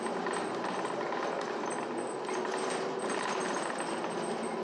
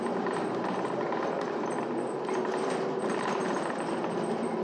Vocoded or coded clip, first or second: second